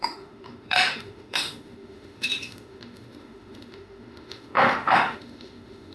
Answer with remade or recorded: remade